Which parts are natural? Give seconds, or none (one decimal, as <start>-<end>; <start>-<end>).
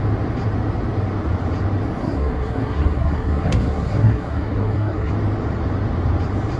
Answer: 0.0-2.0; 5.1-6.6